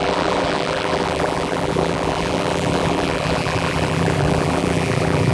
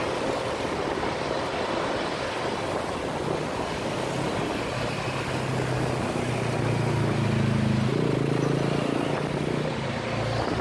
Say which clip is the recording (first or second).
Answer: second